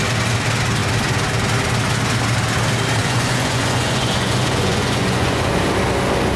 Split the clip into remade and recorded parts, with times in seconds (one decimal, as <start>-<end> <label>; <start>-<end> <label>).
0.0-3.0 recorded; 3.0-5.6 remade; 5.6-6.4 recorded